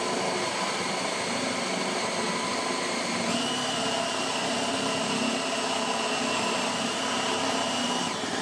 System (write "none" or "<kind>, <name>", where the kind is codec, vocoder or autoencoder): none